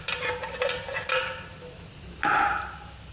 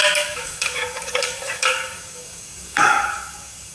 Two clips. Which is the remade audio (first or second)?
second